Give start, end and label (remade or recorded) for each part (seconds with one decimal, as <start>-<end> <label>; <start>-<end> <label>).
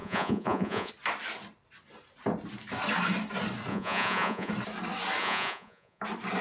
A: 0.0-0.9 remade; 0.9-3.7 recorded; 3.7-4.5 remade; 4.5-5.2 recorded; 5.2-6.0 remade; 6.0-6.4 recorded